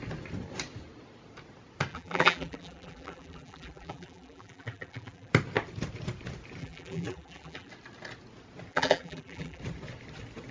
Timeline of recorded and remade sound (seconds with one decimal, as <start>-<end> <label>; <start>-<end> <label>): 0.0-1.9 recorded; 1.9-5.3 remade; 5.3-6.6 recorded; 6.6-7.7 remade; 7.7-8.7 recorded; 8.7-9.6 remade; 9.6-10.5 recorded